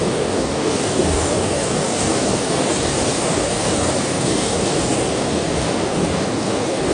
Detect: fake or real fake